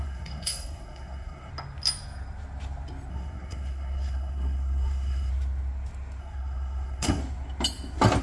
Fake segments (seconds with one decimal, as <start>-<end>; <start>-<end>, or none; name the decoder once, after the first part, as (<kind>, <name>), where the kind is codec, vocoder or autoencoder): 0.0-1.5 (codec, SNAC); 3.1-5.3; 6.2-7.2